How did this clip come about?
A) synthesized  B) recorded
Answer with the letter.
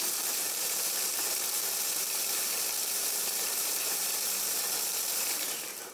A